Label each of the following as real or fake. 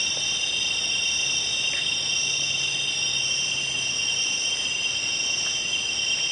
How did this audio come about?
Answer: real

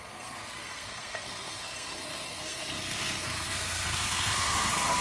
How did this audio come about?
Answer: fake